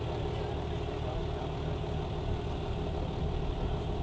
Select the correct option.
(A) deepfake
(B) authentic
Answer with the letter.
B